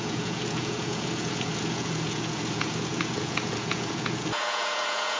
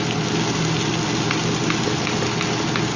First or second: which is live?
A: second